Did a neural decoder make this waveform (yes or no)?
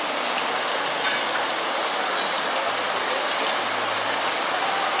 no